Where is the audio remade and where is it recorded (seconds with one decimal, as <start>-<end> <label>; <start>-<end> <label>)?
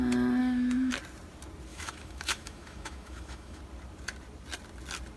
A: 0.0-0.4 recorded; 0.4-0.9 remade; 0.9-1.7 recorded; 1.7-3.6 remade; 3.6-5.2 recorded